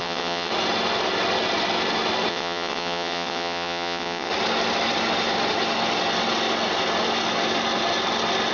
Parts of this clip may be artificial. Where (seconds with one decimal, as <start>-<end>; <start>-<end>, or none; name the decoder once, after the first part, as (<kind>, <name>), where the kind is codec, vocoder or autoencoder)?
0.0-0.5 (vocoder, WaveNeXt); 2.3-4.3